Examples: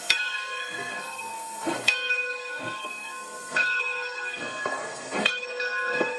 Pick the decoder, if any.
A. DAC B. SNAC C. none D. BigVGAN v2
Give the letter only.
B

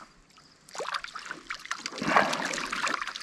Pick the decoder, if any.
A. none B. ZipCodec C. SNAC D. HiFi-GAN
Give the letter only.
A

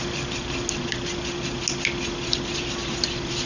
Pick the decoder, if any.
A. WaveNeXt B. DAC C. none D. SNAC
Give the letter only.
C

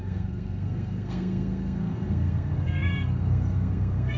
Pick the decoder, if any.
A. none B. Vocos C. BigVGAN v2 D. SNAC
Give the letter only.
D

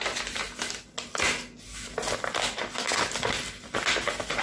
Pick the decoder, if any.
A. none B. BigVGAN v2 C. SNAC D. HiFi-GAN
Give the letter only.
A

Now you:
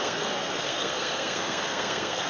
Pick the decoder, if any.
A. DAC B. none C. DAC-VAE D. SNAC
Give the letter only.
D